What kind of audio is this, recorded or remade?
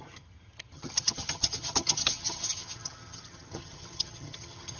remade